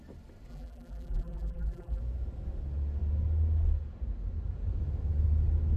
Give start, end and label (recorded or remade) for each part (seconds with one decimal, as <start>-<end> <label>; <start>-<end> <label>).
0.0-0.5 recorded; 0.5-2.0 remade; 2.0-5.8 recorded